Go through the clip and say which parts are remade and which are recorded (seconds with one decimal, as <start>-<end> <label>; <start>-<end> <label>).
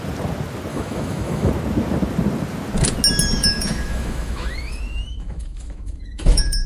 0.0-0.7 recorded; 0.7-1.5 remade; 1.5-3.4 recorded; 3.4-6.7 remade